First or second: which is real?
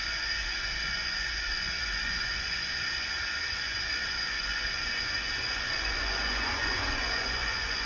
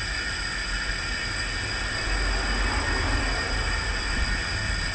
second